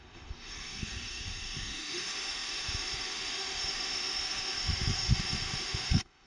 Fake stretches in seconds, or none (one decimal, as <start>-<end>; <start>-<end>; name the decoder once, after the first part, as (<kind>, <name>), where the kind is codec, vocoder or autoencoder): 0.0-6.3 (autoencoder, DAC-VAE)

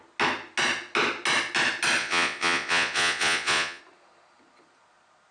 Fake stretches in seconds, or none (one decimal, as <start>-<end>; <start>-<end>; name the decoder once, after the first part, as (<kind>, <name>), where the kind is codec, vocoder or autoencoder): 2.0-3.8 (vocoder, Vocos)

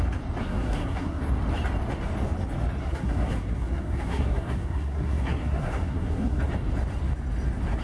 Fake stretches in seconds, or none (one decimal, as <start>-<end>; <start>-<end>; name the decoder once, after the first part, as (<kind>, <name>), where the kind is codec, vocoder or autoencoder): 0.4-1.2 (codec, SNAC); 2.8-6.4

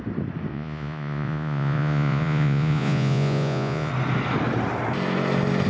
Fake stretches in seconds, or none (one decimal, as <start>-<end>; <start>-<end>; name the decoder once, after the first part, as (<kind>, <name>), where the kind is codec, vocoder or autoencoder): 0.5-3.9 (vocoder, Vocos)

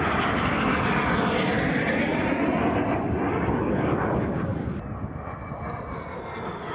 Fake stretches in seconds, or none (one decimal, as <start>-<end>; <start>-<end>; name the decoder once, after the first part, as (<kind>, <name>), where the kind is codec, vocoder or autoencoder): none

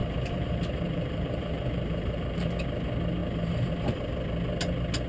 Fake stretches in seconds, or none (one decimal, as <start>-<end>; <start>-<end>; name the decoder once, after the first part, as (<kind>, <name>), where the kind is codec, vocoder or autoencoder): 0.0-2.5 (vocoder, BigVGAN v2); 3.2-3.7

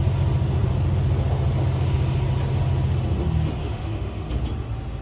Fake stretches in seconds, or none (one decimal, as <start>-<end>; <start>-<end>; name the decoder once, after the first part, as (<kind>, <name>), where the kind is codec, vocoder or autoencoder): 3.6-4.3 (autoencoder, DAC-VAE)

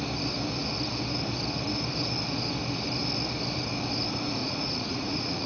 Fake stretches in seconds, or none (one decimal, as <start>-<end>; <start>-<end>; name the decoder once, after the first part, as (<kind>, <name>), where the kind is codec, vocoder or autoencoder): 4.4-5.5 (vocoder, Vocos)